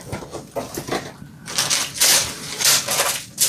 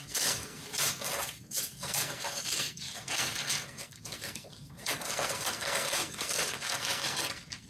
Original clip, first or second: first